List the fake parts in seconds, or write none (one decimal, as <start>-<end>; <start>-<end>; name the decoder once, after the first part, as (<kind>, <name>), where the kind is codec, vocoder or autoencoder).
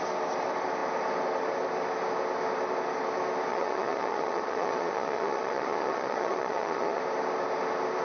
3.5-7.0 (vocoder, Vocos)